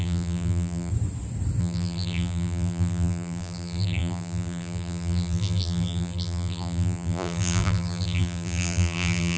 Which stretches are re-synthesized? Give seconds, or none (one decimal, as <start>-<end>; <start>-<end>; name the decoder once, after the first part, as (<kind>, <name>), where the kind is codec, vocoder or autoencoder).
0.0-0.9 (vocoder, BigVGAN v2); 1.6-9.4